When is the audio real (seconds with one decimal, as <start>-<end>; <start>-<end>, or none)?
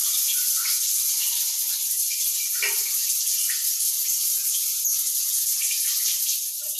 0.8-6.8